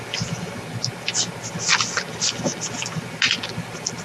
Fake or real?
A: real